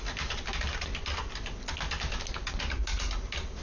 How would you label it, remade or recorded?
recorded